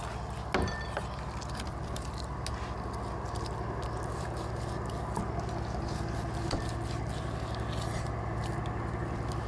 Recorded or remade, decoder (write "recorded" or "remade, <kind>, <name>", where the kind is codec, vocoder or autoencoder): recorded